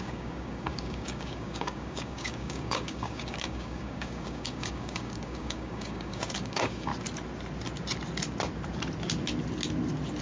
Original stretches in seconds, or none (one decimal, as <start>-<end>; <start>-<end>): 6.9-10.2